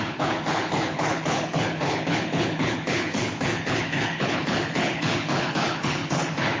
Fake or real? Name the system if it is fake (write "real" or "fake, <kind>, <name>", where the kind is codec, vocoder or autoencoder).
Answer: fake, codec, HILCodec